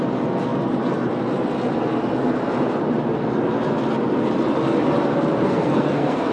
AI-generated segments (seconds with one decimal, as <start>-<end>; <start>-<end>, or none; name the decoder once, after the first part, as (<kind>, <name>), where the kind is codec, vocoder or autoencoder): 5.4-6.3 (codec, SNAC)